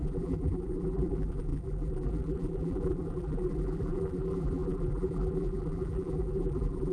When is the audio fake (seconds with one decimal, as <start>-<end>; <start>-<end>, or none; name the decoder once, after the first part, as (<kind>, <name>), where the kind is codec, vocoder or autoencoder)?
0.0-6.9 (vocoder, BigVGAN v2)